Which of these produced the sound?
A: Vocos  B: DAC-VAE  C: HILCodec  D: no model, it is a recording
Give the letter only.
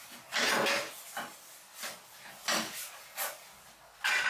D